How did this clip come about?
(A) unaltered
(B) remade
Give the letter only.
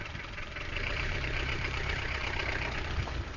B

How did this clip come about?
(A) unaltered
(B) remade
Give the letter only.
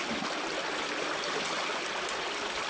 A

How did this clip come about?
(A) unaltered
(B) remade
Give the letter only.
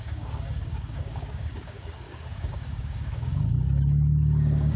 B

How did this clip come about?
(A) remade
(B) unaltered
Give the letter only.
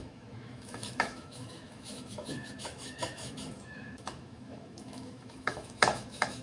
A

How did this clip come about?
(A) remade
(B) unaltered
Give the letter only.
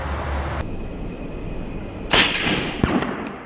B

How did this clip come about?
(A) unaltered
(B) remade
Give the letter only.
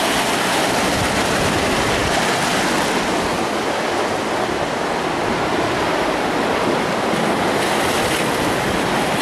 A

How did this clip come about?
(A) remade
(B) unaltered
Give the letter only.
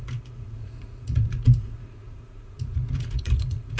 A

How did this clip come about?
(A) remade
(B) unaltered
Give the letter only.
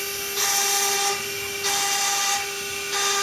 B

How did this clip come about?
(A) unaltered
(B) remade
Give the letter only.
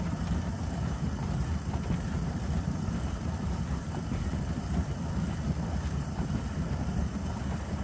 B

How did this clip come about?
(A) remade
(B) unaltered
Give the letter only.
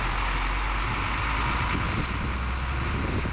B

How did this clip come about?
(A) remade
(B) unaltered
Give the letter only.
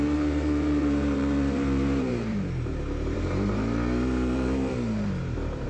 A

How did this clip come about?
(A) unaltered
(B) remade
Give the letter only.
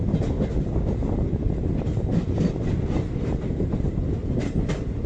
A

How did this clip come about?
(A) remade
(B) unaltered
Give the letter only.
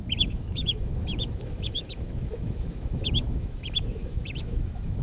A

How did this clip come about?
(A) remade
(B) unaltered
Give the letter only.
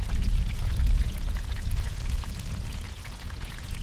A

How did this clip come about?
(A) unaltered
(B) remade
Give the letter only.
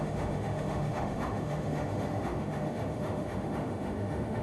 B